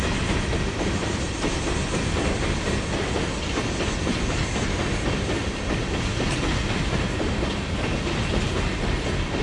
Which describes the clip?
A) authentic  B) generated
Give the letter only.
A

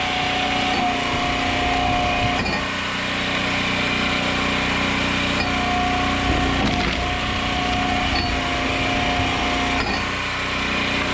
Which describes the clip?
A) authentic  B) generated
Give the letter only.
A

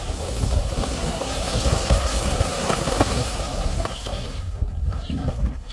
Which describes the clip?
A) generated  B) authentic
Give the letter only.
A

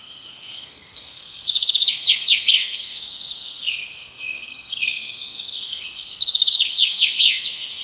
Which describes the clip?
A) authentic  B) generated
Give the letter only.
B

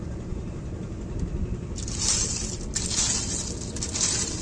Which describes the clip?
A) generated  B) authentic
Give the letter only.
B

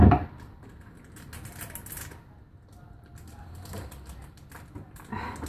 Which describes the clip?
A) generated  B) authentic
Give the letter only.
B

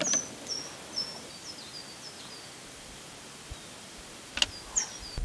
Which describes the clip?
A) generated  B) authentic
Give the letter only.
B